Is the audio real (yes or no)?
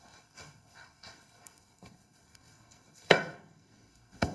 no